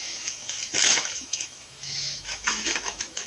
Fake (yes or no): yes